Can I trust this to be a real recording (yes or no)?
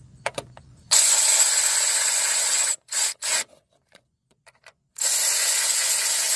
no